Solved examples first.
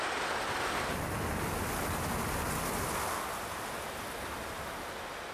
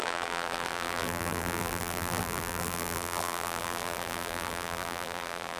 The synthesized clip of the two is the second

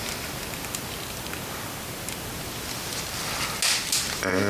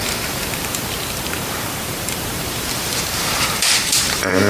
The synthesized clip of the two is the second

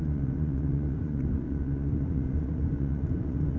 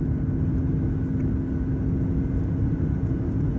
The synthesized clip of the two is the first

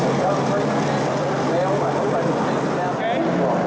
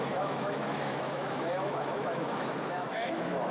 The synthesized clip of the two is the second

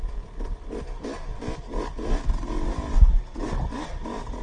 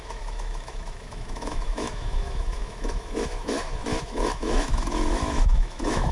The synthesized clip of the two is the second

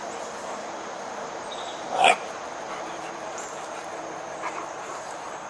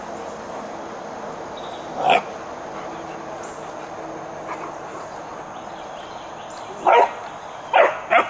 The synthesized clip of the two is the first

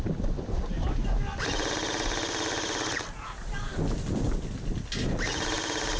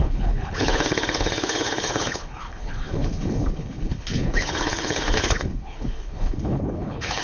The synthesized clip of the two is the second